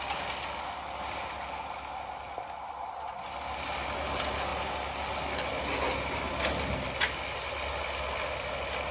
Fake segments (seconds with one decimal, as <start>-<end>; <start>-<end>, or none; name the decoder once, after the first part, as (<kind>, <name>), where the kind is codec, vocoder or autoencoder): none